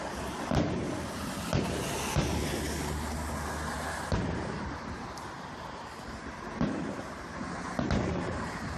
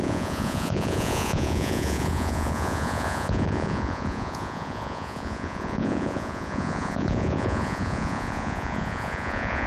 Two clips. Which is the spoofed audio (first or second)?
second